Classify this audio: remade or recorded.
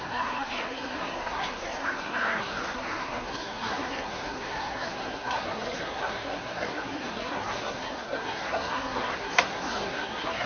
remade